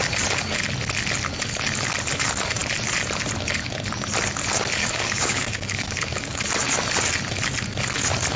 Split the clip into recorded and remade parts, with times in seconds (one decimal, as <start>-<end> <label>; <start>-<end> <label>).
0.0-4.8 recorded; 4.8-6.4 remade; 6.4-8.4 recorded